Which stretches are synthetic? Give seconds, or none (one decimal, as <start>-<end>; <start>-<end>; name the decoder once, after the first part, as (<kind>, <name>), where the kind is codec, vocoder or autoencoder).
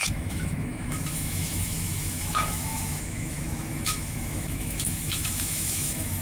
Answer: 0.0-6.2 (autoencoder, DAC-VAE)